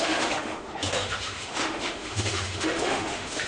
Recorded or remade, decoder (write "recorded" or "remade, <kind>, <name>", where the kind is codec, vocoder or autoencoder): remade, autoencoder, DAC-VAE